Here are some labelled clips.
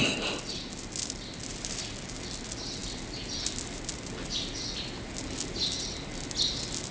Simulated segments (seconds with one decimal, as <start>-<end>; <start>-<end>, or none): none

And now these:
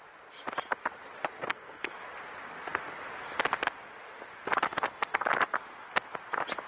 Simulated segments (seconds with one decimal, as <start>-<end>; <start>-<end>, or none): 1.4-1.9

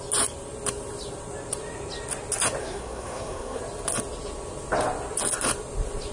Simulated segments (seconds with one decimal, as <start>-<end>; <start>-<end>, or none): 2.6-3.6

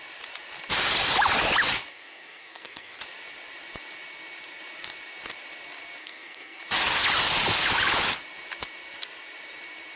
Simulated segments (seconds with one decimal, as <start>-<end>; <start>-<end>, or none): 1.9-3.0; 6.0-6.6